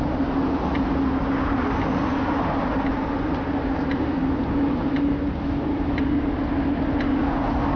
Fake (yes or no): no